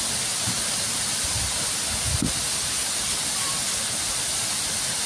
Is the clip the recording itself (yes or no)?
yes